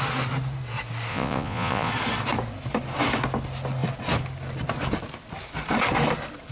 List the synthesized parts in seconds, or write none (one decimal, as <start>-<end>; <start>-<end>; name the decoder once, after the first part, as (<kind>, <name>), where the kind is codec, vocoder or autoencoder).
1.1-1.9 (vocoder, Vocos)